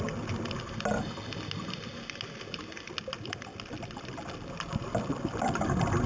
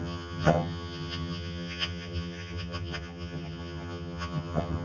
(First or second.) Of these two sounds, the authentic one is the first